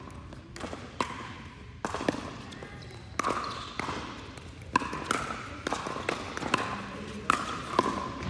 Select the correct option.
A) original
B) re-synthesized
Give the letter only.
A